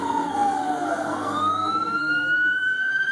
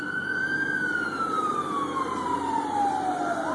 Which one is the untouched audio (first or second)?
second